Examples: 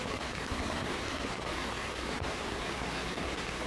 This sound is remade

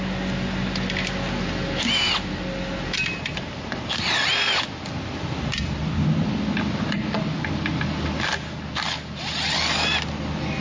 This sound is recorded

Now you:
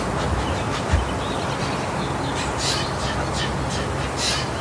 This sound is recorded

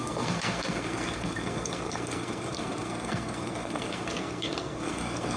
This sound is remade